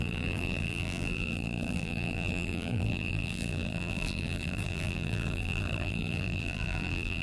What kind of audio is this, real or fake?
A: fake